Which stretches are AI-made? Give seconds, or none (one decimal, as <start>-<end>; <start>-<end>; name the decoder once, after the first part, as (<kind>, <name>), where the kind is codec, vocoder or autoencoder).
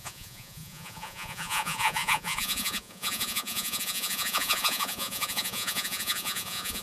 0.0-6.8 (vocoder, Vocos)